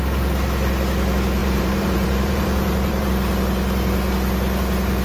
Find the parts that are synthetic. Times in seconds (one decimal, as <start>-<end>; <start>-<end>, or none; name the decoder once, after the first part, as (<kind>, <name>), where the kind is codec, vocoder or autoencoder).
1.4-3.1 (vocoder, BigVGAN v2)